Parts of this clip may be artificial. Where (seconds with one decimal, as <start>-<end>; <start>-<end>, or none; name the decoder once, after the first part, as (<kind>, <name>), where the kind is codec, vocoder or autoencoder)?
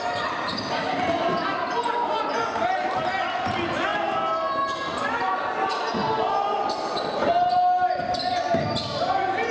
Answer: none